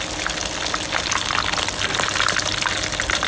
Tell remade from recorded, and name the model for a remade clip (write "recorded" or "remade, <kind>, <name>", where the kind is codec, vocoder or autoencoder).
recorded